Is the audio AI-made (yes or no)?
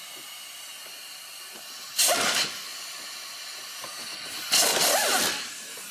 no